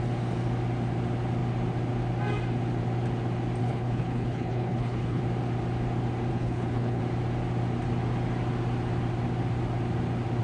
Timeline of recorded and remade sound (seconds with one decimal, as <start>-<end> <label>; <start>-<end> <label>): 0.0-3.6 recorded; 3.6-5.2 remade; 5.2-6.3 recorded; 6.3-7.0 remade; 7.0-10.4 recorded